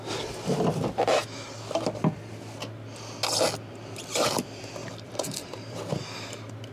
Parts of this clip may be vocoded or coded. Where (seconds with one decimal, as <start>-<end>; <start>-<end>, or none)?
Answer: 4.8-5.9